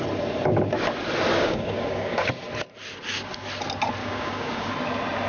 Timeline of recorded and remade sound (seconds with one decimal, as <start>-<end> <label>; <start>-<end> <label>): 0.0-1.3 recorded; 1.3-2.3 remade; 2.3-4.0 recorded; 4.0-4.7 remade; 4.7-5.3 recorded